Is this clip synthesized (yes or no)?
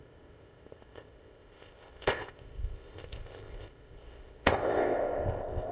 yes